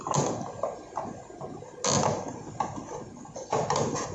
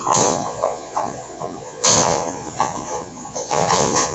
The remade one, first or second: second